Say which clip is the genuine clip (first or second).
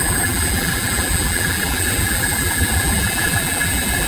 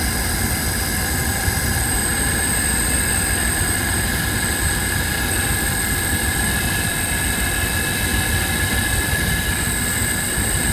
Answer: second